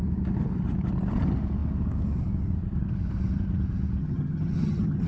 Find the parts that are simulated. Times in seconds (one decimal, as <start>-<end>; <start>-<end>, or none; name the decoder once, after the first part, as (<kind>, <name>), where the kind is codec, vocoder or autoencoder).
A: 4.0-5.1 (vocoder, HiFi-GAN)